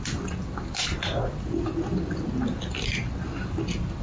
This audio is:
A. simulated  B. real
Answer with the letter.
B